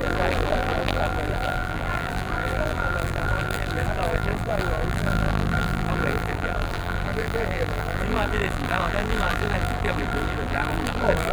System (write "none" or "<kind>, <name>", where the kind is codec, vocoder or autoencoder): vocoder, BigVGAN v2